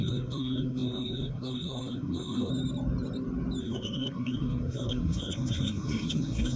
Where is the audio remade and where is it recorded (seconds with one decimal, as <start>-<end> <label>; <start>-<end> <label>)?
0.0-2.5 remade; 2.5-3.6 recorded; 3.6-6.6 remade